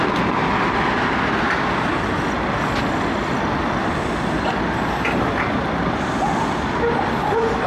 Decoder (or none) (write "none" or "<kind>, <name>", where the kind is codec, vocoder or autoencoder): none